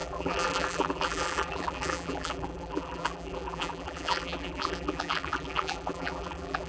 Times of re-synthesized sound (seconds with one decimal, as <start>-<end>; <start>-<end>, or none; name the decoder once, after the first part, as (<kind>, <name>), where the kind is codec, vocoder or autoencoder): 0.0-6.7 (vocoder, BigVGAN v2)